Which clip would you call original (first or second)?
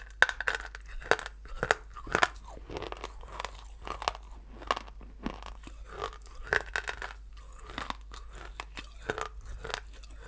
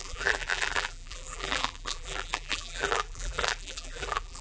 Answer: first